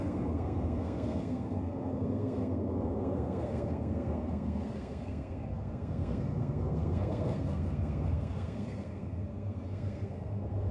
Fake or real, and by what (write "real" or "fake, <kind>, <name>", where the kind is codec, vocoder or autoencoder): fake, codec, SNAC